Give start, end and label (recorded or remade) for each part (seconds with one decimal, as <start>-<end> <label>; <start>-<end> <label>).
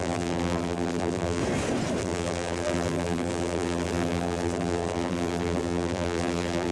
0.0-1.4 remade; 1.4-2.0 recorded; 2.0-6.7 remade